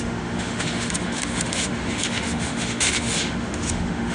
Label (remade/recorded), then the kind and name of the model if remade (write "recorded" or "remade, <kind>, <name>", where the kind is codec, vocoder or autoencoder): remade, autoencoder, DAC-VAE